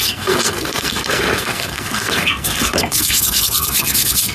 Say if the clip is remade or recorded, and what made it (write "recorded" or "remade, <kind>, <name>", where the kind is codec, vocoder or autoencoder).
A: remade, codec, SNAC